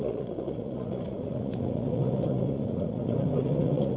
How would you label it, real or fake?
fake